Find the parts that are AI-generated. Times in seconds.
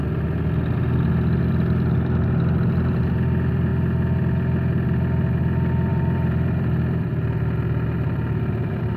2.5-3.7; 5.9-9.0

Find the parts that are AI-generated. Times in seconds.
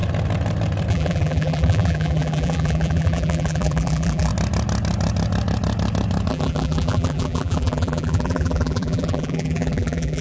0.9-4.3; 6.3-10.2